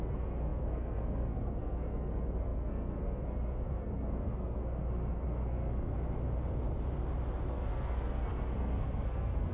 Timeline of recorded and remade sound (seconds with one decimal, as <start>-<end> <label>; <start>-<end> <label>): 0.0-5.9 remade; 5.9-7.5 recorded; 7.5-9.5 remade